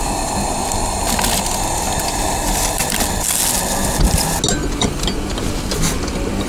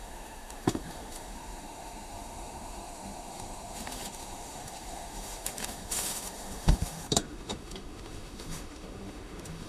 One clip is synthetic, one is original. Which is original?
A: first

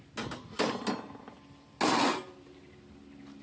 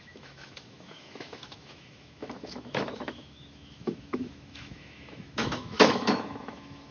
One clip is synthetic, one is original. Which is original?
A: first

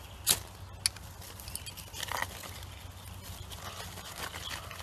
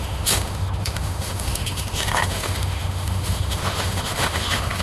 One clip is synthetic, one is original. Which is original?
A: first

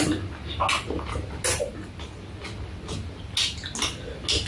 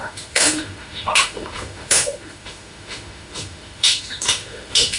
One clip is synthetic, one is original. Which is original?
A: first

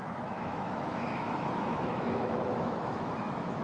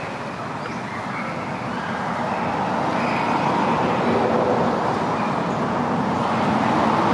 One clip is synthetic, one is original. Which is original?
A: second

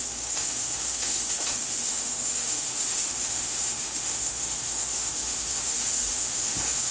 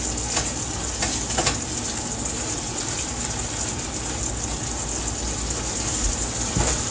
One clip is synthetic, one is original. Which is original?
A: second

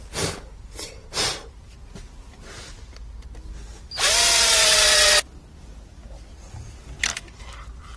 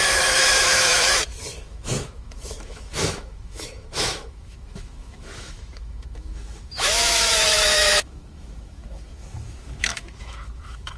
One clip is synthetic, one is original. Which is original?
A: first